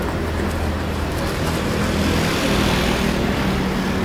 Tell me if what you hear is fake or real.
real